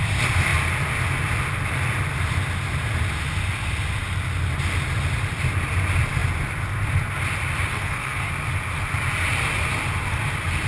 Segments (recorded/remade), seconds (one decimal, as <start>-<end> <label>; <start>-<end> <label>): 0.0-7.7 recorded; 7.7-8.3 remade; 8.3-10.7 recorded